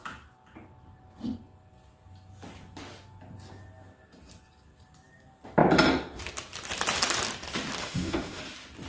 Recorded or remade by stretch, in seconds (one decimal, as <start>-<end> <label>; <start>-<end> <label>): 0.0-7.8 recorded; 7.8-8.4 remade; 8.4-8.9 recorded